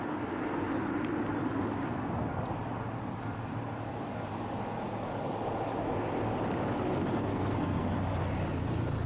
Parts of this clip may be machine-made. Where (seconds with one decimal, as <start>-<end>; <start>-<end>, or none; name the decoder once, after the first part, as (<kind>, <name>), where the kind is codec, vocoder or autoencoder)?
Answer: 7.3-7.9 (codec, SNAC)